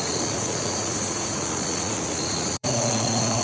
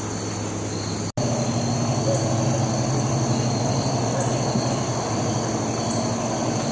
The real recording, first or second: second